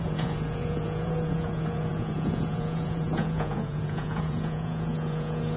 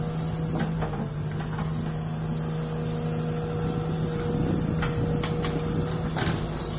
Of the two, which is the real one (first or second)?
second